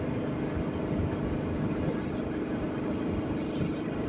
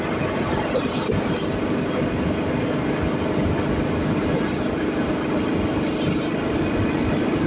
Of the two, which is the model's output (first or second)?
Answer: second